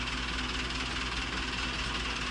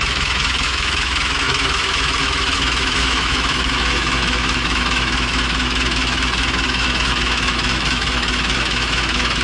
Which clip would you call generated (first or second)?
second